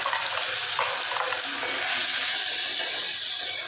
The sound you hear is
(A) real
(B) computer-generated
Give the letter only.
A